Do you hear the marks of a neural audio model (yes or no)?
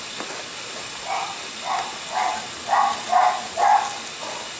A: no